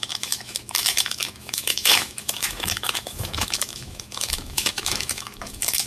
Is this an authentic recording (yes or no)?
no